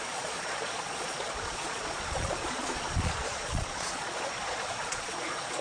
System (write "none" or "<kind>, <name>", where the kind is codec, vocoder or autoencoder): vocoder, Vocos